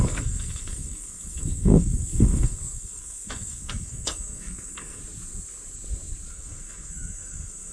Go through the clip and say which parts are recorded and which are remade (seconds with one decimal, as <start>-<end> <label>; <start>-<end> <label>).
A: 0.0-5.0 remade; 5.0-6.3 recorded; 6.3-7.7 remade